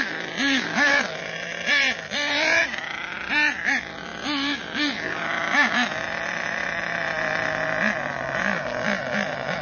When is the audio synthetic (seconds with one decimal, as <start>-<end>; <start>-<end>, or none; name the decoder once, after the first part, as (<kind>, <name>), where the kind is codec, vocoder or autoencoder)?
0.0-2.6 (vocoder, BigVGAN v2); 3.3-9.6